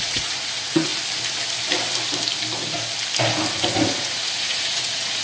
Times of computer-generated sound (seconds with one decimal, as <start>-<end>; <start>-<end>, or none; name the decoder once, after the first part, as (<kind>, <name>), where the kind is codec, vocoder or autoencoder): 0.0-0.9 (vocoder, Vocos); 4.0-5.2